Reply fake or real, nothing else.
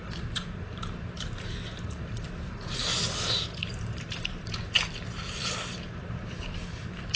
fake